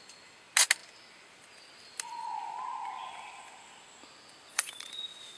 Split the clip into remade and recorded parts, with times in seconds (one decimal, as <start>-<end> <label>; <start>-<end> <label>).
0.0-4.5 recorded; 4.5-5.0 remade; 5.0-5.4 recorded